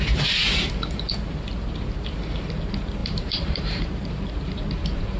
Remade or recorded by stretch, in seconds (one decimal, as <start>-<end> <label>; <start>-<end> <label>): 0.0-0.4 recorded; 0.4-1.1 remade; 1.1-3.0 recorded; 3.0-5.2 remade